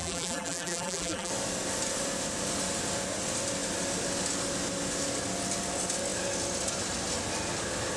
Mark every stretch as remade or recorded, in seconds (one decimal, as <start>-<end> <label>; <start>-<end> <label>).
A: 0.0-1.3 remade; 1.3-8.0 recorded